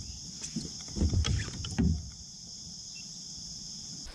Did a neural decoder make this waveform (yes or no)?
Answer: no